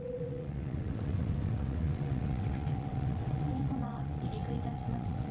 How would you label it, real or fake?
fake